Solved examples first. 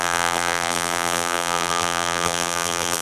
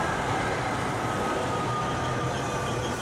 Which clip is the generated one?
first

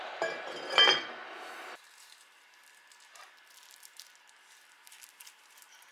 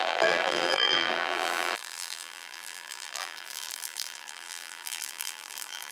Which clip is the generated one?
second